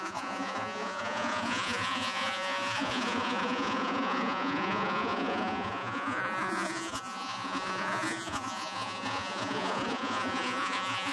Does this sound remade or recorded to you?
remade